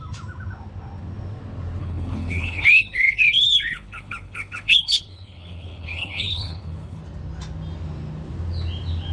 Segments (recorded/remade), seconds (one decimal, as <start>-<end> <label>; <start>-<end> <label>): 0.0-1.8 recorded; 1.8-7.0 remade; 7.0-9.1 recorded